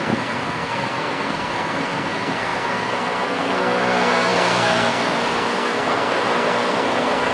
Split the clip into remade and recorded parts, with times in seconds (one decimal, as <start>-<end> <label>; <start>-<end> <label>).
0.0-7.3 remade